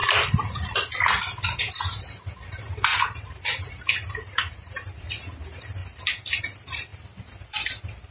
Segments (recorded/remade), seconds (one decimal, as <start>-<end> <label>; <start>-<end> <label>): 0.0-1.6 remade; 1.6-2.9 recorded; 2.9-5.1 remade; 5.1-5.8 recorded; 5.8-6.4 remade; 6.4-6.9 recorded; 6.9-7.6 remade; 7.6-8.1 recorded

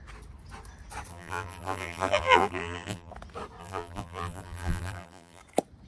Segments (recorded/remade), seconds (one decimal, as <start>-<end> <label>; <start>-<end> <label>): 0.0-1.1 recorded; 1.1-3.1 remade; 3.1-3.6 recorded; 3.6-5.4 remade; 5.4-5.9 recorded